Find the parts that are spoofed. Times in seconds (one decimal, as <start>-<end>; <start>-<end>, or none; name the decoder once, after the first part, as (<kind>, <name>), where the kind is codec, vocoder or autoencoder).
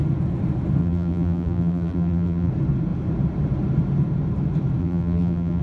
0.8-2.5 (vocoder, BigVGAN v2); 4.8-5.6